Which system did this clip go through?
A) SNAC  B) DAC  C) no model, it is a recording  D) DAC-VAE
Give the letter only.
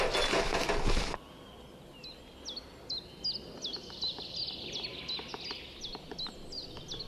C